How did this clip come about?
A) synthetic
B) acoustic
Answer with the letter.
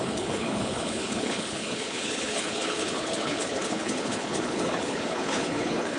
A